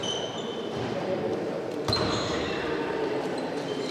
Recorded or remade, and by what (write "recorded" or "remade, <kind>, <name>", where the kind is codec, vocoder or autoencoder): remade, vocoder, BigVGAN v2